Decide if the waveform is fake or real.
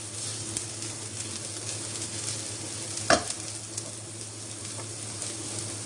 real